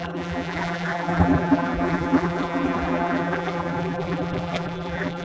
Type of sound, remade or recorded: remade